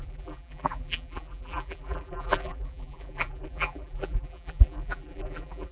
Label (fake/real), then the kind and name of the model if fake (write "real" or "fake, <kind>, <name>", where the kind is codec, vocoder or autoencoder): fake, vocoder, BigVGAN v2